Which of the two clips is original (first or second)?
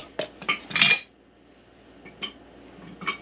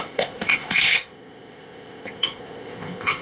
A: first